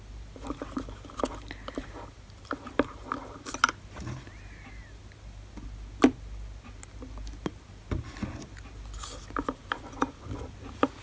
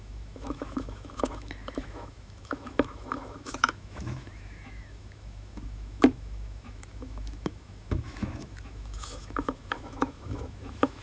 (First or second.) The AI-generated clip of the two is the second